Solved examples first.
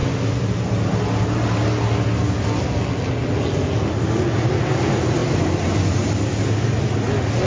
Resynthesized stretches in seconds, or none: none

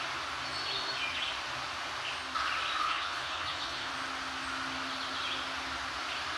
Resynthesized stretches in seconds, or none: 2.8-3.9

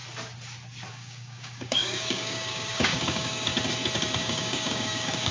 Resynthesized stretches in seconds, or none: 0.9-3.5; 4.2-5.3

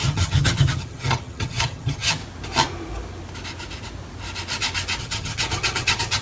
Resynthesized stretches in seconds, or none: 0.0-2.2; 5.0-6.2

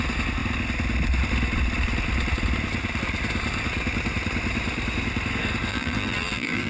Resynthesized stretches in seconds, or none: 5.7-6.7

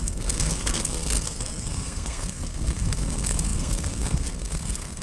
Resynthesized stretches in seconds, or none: 0.0-5.0

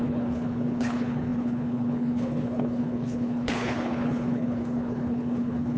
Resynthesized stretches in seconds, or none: 0.0-5.8